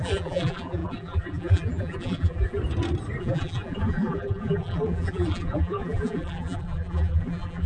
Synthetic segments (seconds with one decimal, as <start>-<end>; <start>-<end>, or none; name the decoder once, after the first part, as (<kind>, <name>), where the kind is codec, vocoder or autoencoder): 0.0-2.6 (vocoder, BigVGAN v2); 3.2-7.7